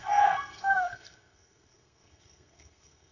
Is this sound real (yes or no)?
no